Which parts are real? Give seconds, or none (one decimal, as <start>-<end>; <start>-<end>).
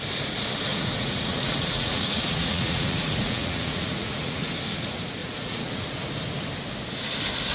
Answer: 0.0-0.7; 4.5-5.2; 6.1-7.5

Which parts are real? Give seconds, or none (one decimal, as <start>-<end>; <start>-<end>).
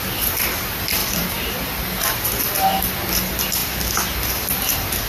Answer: 0.0-5.1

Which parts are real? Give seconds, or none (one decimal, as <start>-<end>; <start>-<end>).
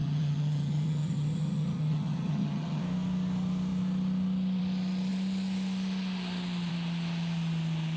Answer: 2.8-8.0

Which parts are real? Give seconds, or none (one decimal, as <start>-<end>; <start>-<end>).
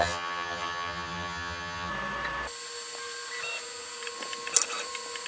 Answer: 1.9-5.3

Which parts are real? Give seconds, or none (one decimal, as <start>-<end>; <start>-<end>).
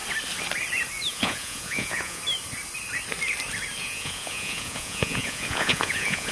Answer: 0.0-1.1; 2.2-3.8